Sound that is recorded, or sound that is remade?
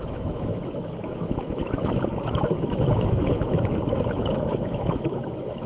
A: remade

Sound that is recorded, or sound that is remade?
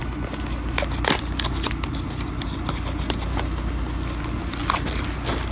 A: recorded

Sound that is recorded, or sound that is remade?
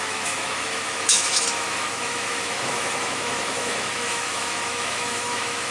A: remade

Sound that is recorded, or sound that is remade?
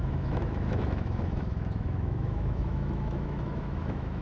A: remade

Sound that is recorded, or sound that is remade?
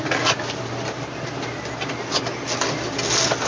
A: recorded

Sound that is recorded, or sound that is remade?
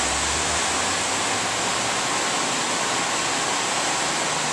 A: recorded